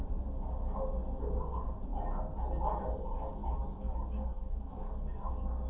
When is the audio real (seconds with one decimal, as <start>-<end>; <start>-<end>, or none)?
0.0-3.4; 5.3-5.7